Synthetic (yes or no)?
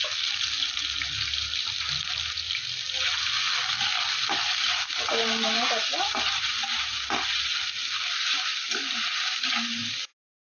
no